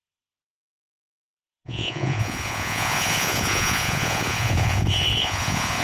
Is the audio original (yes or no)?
no